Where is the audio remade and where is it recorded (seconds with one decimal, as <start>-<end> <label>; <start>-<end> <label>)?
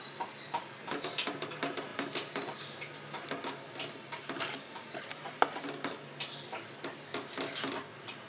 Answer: 0.0-8.3 recorded